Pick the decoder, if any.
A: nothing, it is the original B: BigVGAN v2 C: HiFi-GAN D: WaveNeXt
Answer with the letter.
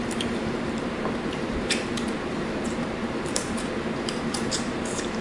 B